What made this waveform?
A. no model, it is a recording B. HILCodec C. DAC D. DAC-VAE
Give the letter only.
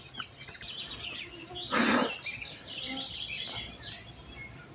A